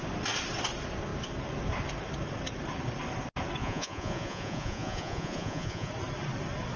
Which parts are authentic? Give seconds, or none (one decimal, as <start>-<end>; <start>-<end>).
0.0-3.6; 5.9-6.8